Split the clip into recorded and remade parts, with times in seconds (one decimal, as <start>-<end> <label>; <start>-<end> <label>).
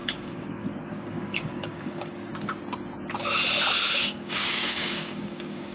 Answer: 0.0-2.3 remade; 2.3-4.0 recorded; 4.0-5.7 remade